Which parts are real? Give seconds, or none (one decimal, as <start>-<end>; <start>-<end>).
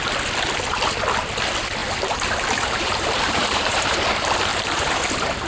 0.0-1.8; 3.8-4.5; 5.0-5.5